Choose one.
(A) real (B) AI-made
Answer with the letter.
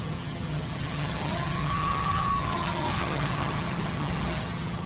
B